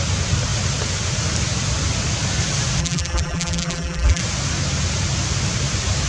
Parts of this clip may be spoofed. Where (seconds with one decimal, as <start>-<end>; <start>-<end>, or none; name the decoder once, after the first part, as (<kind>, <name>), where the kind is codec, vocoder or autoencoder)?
2.8-4.2 (vocoder, BigVGAN v2)